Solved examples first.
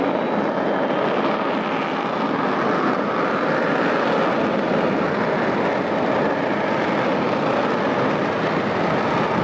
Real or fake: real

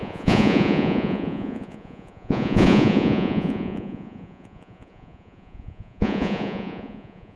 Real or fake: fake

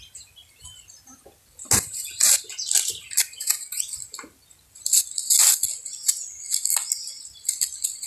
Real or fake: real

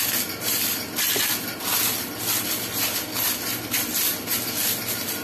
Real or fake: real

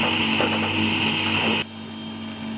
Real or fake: real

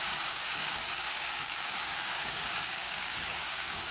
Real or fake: fake